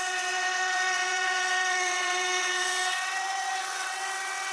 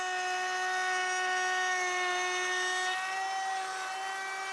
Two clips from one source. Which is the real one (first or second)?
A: second